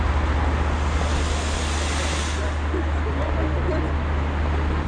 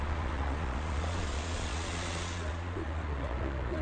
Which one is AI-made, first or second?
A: second